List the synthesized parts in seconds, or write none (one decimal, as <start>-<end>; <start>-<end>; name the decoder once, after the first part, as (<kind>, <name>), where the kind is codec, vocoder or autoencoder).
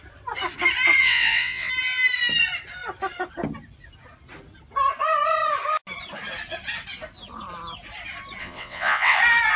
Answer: 1.0-1.7 (vocoder, WaveNeXt); 8.4-9.2